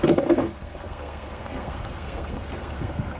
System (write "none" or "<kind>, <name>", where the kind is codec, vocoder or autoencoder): codec, SNAC